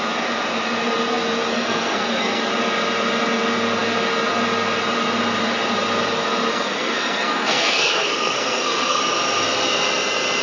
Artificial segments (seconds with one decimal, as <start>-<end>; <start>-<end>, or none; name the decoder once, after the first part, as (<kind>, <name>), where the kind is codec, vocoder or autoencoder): 1.5-2.4 (codec, SNAC); 6.5-9.0